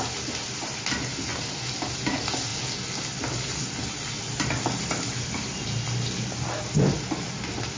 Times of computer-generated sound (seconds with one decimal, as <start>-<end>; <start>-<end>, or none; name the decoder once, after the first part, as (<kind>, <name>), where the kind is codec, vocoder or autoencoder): none